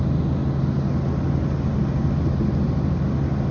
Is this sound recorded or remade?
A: recorded